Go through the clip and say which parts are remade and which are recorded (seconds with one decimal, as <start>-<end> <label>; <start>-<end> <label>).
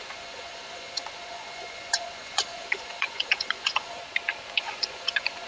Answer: 0.0-4.0 remade; 4.0-4.6 recorded; 4.6-5.5 remade